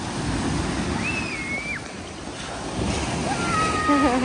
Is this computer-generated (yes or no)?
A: no